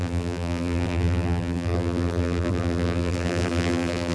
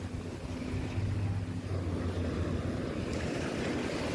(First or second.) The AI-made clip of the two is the first